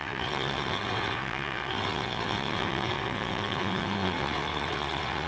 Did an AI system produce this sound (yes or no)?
yes